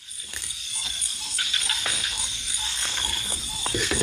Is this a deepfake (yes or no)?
yes